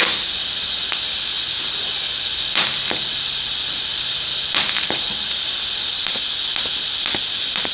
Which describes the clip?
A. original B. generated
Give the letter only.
A